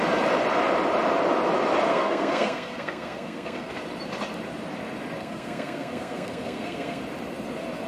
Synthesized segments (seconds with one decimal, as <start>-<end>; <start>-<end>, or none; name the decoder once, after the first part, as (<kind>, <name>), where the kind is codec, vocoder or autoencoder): 1.9-3.7 (codec, SNAC); 5.2-7.0

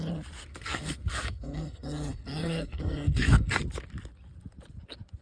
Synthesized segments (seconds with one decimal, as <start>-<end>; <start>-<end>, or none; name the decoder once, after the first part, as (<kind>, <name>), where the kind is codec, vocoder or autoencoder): 0.5-3.6 (codec, SNAC)

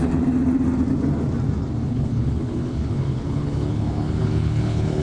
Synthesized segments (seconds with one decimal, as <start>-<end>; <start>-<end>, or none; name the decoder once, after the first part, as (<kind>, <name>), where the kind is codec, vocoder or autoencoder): 1.8-5.0 (codec, HILCodec)

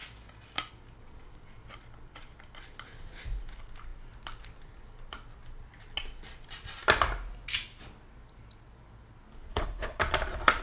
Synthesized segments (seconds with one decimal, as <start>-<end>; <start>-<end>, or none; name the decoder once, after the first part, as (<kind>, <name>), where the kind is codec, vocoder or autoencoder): 9.5-10.0 (codec, HILCodec)